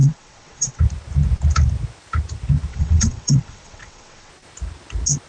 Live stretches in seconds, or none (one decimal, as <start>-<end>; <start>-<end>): 0.8-2.7; 4.3-5.3